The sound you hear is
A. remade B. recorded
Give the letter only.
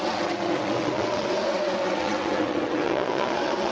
A